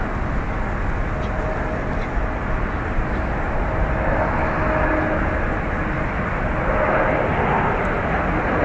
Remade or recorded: recorded